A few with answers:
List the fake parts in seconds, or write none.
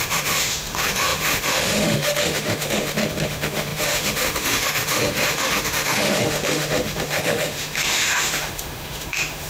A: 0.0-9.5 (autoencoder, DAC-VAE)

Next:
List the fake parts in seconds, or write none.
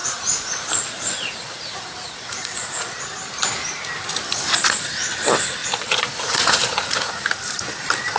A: 0.0-3.0 (vocoder, Vocos); 5.6-7.3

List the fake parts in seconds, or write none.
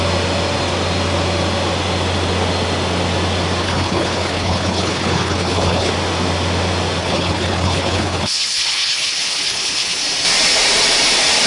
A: 3.6-5.9 (codec, HILCodec); 7.0-10.0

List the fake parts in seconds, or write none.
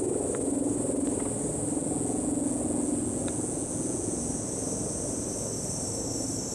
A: 1.8-4.2 (vocoder, Vocos)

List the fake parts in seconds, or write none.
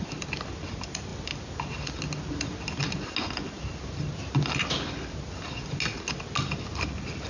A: none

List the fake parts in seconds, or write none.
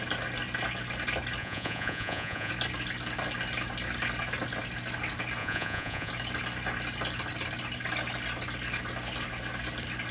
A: 1.4-2.5 (vocoder, Vocos); 5.4-6.1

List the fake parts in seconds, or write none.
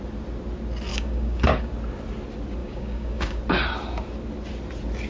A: 0.9-1.7 (codec, DAC); 2.6-3.4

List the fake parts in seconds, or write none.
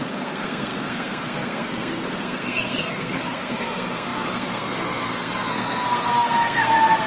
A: 0.0-7.1 (codec, SNAC)